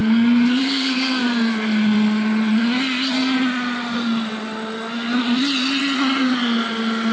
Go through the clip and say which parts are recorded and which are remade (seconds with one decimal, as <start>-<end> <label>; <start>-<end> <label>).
0.0-1.2 remade; 1.2-7.1 recorded

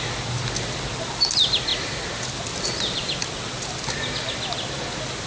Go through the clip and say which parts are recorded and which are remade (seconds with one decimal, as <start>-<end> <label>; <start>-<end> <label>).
0.0-5.3 recorded